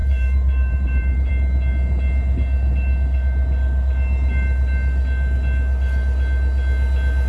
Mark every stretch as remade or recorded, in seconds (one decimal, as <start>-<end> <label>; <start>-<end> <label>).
0.0-1.3 remade; 1.3-7.3 recorded